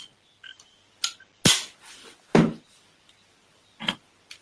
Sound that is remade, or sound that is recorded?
recorded